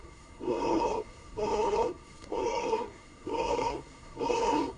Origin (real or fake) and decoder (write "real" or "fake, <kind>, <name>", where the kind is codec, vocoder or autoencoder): fake, codec, SNAC